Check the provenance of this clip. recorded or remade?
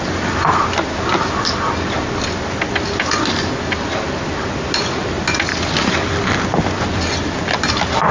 recorded